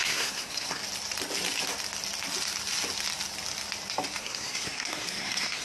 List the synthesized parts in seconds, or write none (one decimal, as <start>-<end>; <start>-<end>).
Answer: 0.0-0.8; 4.2-5.6